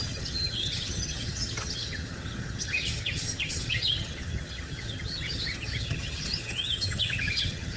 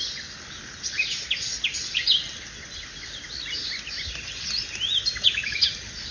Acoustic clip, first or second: second